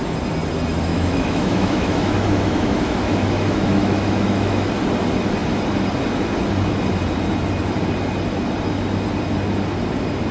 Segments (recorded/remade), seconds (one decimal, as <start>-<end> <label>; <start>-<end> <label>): 0.0-0.9 recorded; 0.9-4.7 remade; 4.7-10.3 recorded